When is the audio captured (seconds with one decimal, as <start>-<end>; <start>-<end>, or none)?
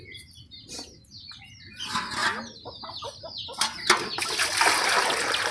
0.0-5.5